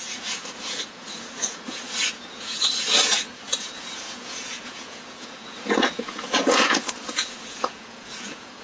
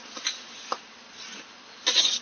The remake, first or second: first